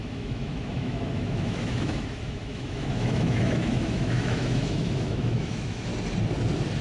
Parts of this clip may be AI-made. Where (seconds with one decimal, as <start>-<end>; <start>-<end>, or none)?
0.0-5.9